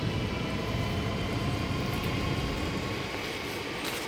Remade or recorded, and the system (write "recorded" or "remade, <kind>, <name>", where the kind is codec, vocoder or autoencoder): recorded